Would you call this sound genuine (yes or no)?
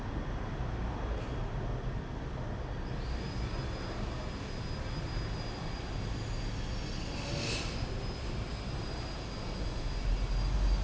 yes